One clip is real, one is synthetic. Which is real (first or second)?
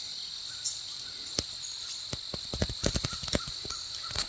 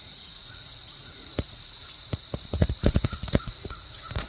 first